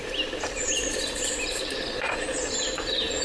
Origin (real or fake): fake